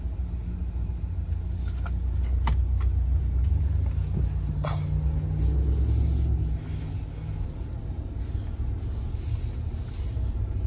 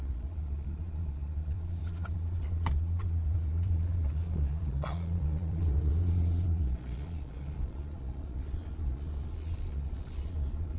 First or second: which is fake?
second